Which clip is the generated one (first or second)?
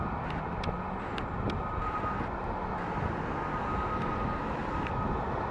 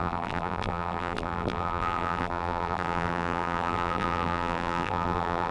second